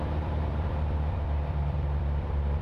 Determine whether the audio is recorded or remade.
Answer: remade